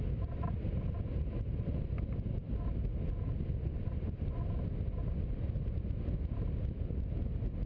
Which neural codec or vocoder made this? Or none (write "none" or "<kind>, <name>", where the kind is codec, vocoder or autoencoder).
none